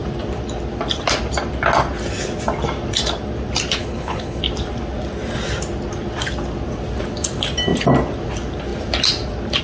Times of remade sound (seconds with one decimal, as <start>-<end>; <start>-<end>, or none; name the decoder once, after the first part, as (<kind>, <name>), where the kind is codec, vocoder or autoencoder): 3.8-4.4 (codec, HILCodec)